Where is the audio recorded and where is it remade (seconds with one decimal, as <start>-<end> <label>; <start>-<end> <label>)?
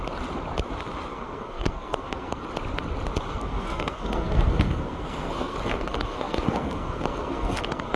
0.0-1.1 recorded; 1.1-2.4 remade; 2.4-3.3 recorded; 3.3-8.0 remade